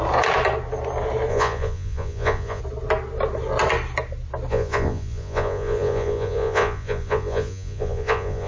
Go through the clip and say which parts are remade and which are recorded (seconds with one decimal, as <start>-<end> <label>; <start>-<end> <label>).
0.0-1.3 recorded; 1.3-2.6 remade; 2.6-4.5 recorded; 4.5-8.5 remade

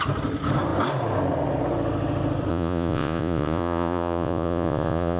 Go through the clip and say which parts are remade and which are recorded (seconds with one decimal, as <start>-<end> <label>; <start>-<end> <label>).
0.0-2.5 recorded; 2.5-5.2 remade

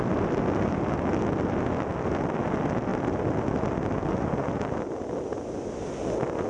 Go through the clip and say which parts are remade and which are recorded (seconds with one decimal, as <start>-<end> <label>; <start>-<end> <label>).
0.0-6.5 recorded

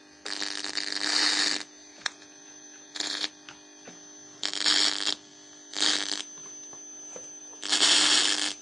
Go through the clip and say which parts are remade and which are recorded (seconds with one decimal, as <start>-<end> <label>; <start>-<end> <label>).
0.0-1.9 recorded; 1.9-3.3 remade; 3.3-8.6 recorded

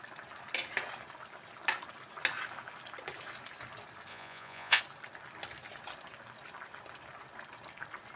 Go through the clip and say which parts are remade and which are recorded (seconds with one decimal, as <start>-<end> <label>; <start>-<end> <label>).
0.0-4.1 recorded; 4.1-4.8 remade; 4.8-8.2 recorded

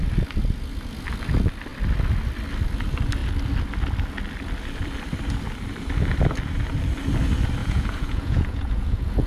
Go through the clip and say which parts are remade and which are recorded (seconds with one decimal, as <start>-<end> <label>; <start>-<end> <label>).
0.0-7.6 recorded; 7.6-9.3 remade